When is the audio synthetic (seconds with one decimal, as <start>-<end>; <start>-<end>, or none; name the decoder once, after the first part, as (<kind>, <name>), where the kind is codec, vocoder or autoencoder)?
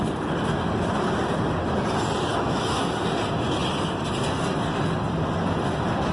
2.3-2.9 (autoencoder, DAC-VAE)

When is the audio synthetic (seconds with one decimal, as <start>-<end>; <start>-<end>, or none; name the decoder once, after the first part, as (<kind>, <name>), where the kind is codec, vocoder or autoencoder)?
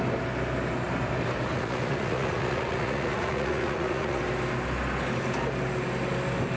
1.5-4.2 (vocoder, Vocos)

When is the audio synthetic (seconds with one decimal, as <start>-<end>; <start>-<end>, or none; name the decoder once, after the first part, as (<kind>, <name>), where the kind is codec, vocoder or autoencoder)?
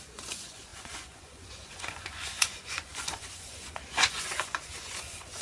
0.0-5.4 (vocoder, Vocos)